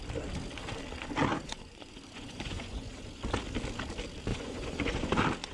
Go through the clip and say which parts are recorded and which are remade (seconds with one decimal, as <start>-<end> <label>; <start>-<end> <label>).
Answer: 0.0-1.3 recorded; 1.3-3.2 remade; 3.2-4.3 recorded; 4.3-5.1 remade; 5.1-5.5 recorded